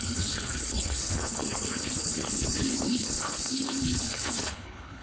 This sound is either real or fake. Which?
fake